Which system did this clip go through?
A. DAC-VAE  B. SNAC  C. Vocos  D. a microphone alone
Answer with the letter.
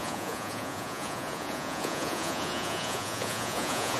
C